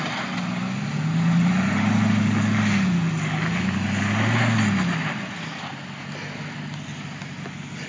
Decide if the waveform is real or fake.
real